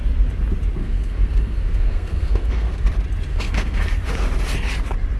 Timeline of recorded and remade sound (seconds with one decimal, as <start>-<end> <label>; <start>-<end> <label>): 0.0-0.8 recorded; 0.8-2.9 remade; 2.9-3.3 recorded; 3.3-3.8 remade; 3.8-5.2 recorded